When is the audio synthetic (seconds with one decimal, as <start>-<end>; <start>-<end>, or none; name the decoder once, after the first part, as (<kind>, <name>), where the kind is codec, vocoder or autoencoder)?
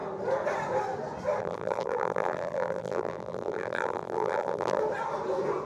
1.4-4.8 (vocoder, BigVGAN v2)